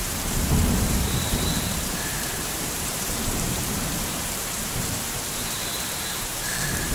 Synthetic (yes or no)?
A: yes